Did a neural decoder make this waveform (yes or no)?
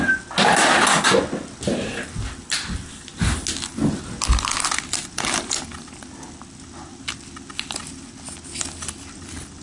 no